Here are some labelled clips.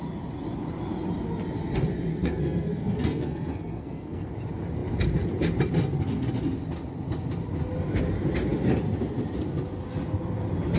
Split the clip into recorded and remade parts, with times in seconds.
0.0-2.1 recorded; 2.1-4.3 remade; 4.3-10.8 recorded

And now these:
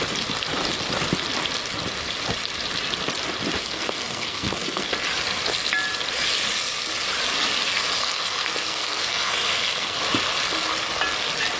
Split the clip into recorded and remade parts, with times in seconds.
0.0-3.6 recorded; 3.6-4.9 remade; 4.9-8.0 recorded; 8.0-10.0 remade; 10.0-11.6 recorded

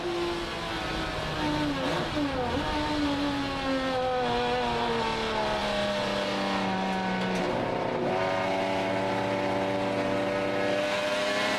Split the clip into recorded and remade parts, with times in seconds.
0.0-11.6 recorded

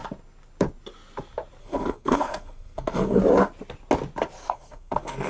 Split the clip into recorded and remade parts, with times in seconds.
0.0-1.6 recorded; 1.6-3.2 remade; 3.2-4.4 recorded; 4.4-5.3 remade

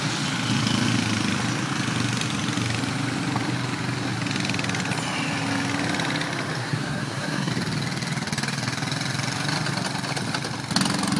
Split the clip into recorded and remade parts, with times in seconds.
0.0-6.6 recorded; 6.6-7.5 remade; 7.5-11.2 recorded